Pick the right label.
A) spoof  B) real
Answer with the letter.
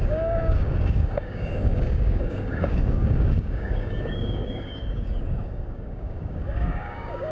A